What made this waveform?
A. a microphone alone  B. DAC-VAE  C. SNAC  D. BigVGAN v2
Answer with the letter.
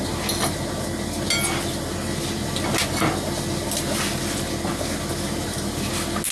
A